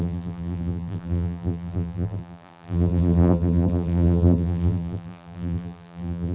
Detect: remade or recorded remade